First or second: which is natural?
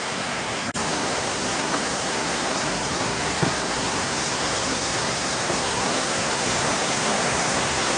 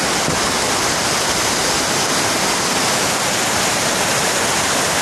second